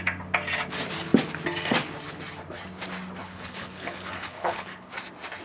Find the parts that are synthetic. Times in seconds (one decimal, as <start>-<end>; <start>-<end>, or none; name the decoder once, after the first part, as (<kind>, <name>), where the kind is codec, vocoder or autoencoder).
3.2-4.9 (codec, HILCodec)